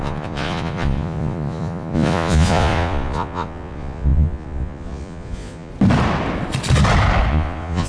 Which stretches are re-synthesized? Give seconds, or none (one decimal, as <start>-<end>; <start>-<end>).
0.0-5.7; 7.3-7.9